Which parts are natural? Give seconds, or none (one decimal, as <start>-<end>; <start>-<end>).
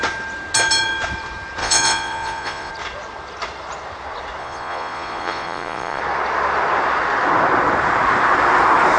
0.0-1.6; 2.7-4.4; 6.0-9.0